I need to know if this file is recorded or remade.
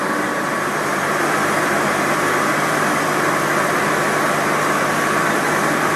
recorded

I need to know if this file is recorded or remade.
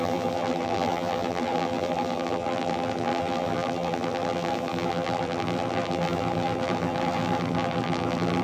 remade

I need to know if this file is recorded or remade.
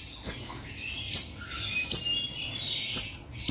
recorded